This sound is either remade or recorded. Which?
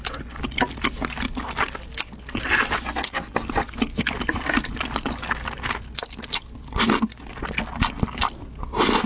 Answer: recorded